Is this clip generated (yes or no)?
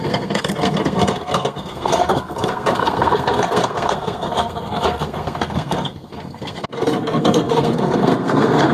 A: yes